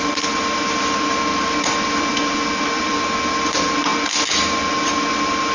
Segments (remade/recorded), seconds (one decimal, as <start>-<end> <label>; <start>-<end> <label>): 0.0-5.5 recorded